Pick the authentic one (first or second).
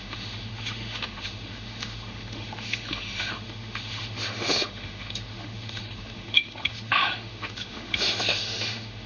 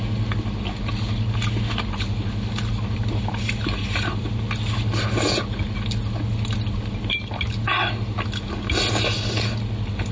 second